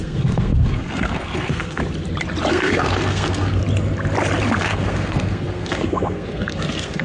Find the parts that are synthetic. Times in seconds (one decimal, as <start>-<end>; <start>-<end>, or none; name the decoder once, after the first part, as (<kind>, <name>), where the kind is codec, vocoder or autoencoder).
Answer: 0.0-1.8 (codec, SNAC); 2.5-3.6; 4.6-7.0